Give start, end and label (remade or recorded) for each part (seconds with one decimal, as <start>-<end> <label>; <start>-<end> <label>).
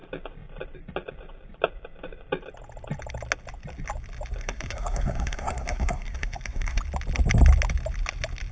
0.0-4.4 recorded; 4.4-6.8 remade; 6.8-8.5 recorded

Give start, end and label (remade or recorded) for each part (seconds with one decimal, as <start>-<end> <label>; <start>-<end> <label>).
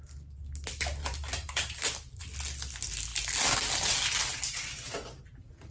0.0-1.0 recorded; 1.0-2.2 remade; 2.2-5.7 recorded